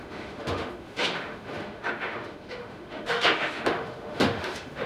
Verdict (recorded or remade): remade